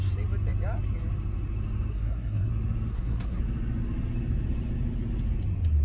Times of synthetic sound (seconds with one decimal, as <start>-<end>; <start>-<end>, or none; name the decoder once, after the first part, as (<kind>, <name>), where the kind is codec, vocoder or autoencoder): 1.9-2.5 (codec, SNAC); 2.9-3.4